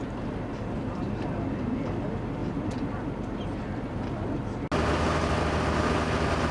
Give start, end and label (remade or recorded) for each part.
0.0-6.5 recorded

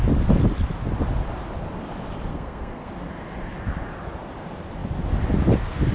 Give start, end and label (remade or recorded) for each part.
0.0-2.3 recorded; 2.3-2.9 remade; 2.9-5.9 recorded

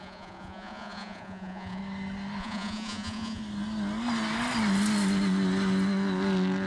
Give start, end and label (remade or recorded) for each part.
0.0-1.8 remade; 1.8-2.4 recorded; 2.4-3.4 remade; 3.4-6.7 recorded

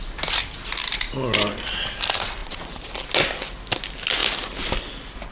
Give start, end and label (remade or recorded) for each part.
0.0-2.4 recorded; 2.4-2.9 remade; 2.9-5.3 recorded

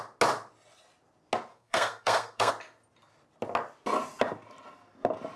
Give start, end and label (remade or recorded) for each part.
0.0-1.5 recorded; 1.5-2.5 remade; 2.5-5.4 recorded

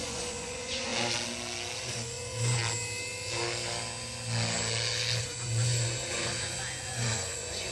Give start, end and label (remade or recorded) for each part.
0.0-0.9 remade; 0.9-1.8 recorded; 1.8-2.6 remade; 2.6-5.2 recorded; 5.2-7.7 remade